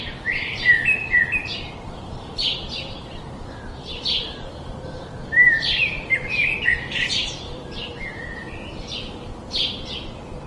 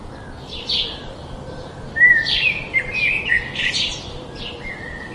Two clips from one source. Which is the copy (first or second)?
first